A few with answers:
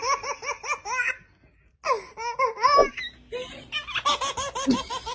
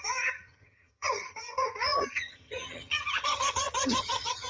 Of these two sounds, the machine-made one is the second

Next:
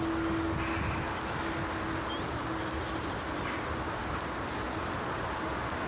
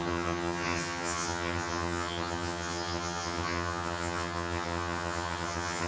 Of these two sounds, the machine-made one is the second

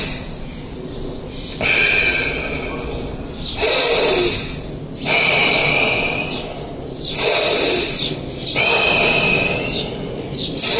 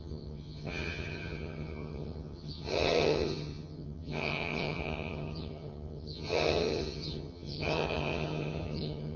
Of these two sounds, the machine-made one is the second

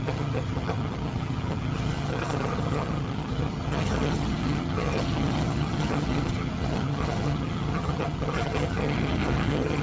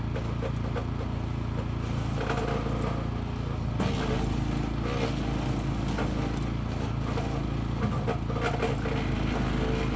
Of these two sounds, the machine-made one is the first